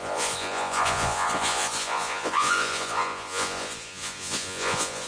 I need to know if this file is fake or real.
fake